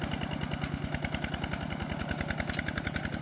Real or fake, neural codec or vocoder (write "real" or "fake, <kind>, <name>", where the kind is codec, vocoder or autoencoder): real